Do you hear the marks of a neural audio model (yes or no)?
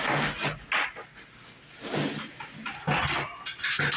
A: no